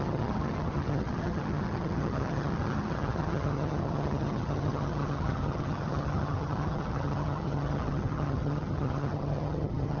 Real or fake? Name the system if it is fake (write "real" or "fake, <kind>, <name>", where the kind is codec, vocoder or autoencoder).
fake, vocoder, HiFi-GAN